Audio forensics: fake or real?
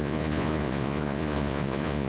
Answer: fake